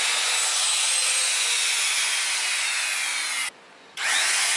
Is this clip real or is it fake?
fake